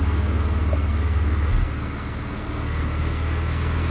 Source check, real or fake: fake